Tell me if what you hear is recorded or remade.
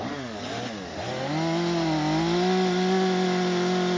recorded